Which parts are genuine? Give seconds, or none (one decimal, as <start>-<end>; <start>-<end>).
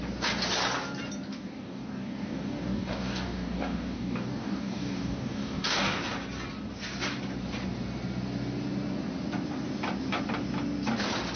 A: 0.0-1.3; 6.0-11.4